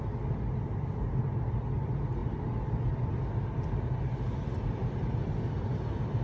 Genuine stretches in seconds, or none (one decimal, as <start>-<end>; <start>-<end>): 0.0-6.2